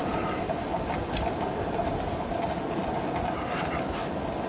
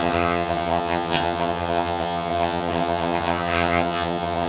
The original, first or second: first